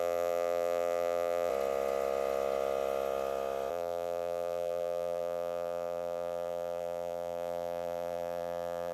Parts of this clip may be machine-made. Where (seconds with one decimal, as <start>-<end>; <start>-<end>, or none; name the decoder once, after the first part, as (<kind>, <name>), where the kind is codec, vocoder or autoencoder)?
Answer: 0.0-1.5 (vocoder, BigVGAN v2); 3.7-8.9